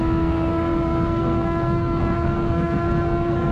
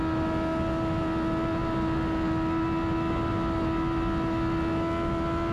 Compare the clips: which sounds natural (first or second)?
second